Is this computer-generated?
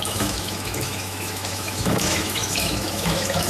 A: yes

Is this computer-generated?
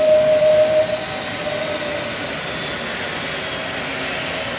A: no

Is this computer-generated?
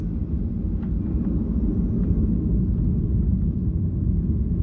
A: no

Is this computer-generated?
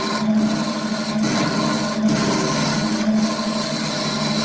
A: no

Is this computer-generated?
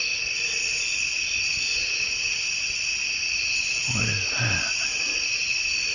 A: no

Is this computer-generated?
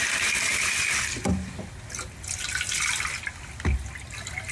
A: no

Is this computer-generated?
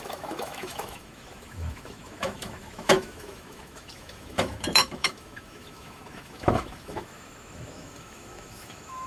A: yes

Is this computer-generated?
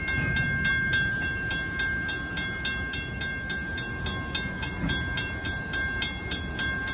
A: no